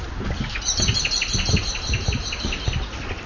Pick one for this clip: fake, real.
real